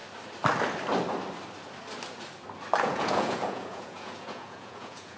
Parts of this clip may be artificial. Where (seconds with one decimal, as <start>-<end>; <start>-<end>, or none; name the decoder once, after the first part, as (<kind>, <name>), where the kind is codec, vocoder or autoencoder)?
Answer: 2.8-5.2 (vocoder, Vocos)